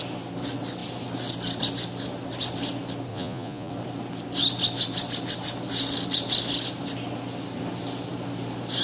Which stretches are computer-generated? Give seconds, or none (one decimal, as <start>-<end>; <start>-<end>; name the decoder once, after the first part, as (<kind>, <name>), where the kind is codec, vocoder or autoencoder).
3.1-3.7 (vocoder, Vocos)